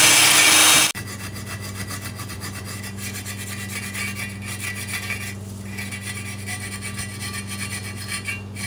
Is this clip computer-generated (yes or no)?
no